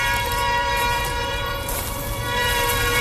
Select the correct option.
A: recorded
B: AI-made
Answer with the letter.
B